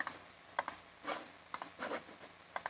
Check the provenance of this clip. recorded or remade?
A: recorded